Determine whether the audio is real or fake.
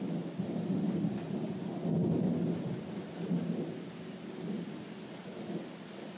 real